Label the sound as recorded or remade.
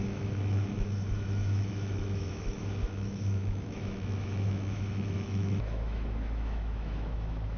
remade